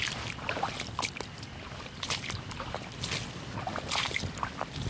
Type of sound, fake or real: real